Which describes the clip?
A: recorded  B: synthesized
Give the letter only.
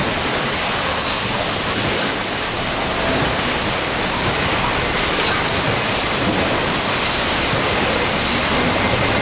A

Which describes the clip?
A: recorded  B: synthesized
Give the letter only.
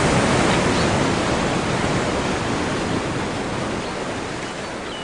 A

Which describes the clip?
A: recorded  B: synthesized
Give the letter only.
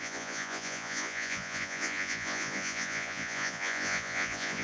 B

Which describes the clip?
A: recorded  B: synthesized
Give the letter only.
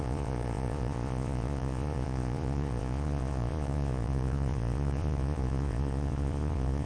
B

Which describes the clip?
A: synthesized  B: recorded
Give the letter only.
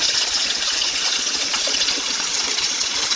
A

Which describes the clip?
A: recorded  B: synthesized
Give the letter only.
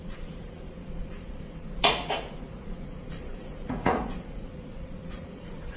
B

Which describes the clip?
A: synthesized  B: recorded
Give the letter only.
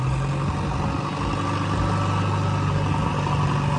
B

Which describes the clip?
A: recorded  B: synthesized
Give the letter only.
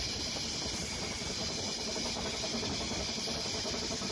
A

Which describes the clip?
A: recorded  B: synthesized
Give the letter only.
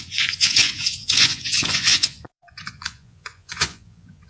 B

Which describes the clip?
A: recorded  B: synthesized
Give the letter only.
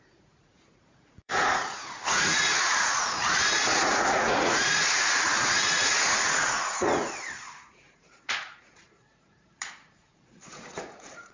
B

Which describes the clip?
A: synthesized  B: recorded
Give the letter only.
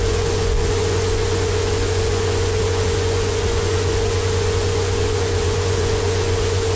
A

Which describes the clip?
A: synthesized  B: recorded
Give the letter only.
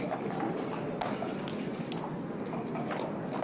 B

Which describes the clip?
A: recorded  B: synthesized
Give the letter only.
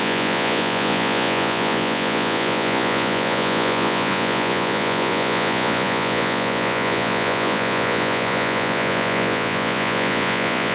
B